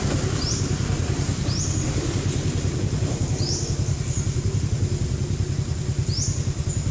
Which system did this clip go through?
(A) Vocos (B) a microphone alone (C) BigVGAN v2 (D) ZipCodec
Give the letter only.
B